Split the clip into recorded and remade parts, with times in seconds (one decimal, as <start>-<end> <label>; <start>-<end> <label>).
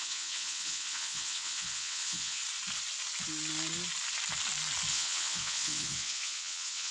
0.0-2.4 remade; 2.4-4.9 recorded; 4.9-6.9 remade